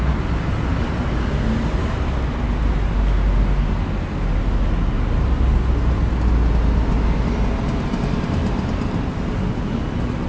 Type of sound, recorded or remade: recorded